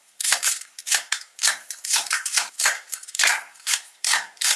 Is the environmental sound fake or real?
fake